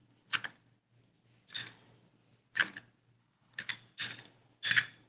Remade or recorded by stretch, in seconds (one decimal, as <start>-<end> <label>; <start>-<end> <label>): 0.0-3.2 recorded; 3.2-3.7 remade; 3.7-5.1 recorded